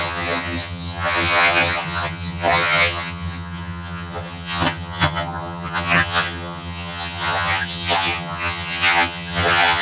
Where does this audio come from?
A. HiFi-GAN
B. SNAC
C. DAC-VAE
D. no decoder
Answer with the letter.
A